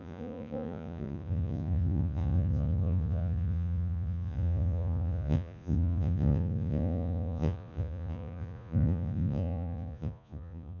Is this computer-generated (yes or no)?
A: yes